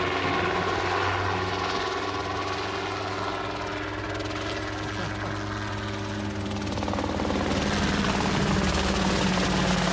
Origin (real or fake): real